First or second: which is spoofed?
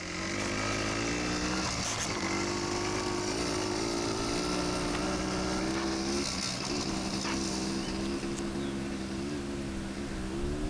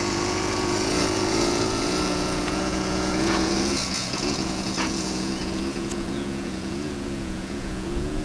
second